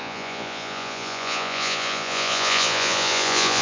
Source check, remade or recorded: remade